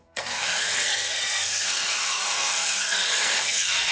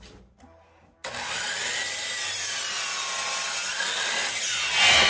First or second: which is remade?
first